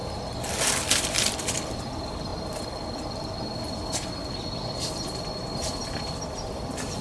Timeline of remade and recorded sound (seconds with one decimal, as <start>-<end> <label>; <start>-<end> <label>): 0.0-0.8 recorded; 0.8-2.3 remade; 2.3-5.5 recorded; 5.5-7.0 remade